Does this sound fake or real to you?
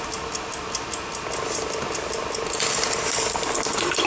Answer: real